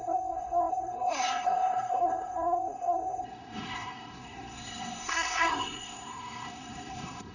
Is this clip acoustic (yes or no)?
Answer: no